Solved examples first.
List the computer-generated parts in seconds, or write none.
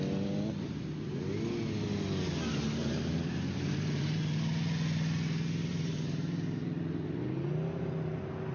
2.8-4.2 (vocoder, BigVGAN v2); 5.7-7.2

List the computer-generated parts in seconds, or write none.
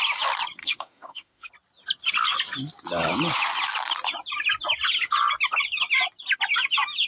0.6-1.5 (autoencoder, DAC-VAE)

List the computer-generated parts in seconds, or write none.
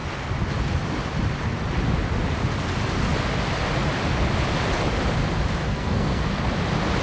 5.6-6.3 (codec, SNAC)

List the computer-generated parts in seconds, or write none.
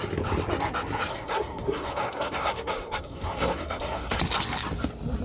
1.1-4.2 (codec, SNAC)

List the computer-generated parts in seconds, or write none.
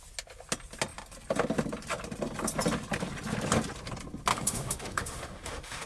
4.3-5.9 (autoencoder, DAC-VAE)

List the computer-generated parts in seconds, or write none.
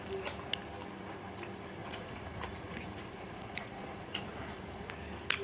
1.8-4.9 (vocoder, Vocos)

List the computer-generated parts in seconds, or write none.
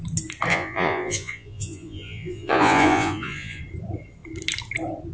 0.5-3.6 (vocoder, Vocos)